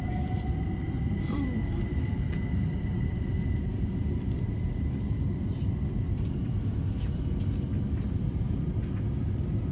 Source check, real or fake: fake